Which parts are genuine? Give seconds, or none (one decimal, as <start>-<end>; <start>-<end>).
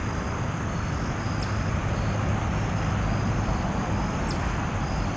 0.0-5.2